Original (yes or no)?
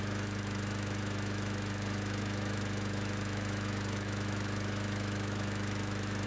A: no